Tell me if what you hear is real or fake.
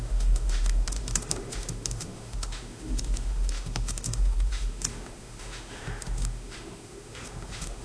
fake